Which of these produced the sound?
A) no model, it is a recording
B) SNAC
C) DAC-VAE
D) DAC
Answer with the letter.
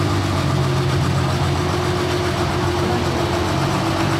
A